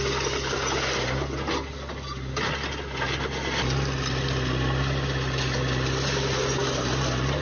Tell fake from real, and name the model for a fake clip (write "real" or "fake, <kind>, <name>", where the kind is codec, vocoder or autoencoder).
real